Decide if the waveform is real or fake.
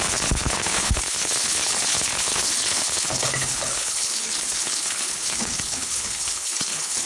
fake